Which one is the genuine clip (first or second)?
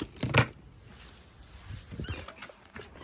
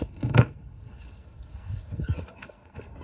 first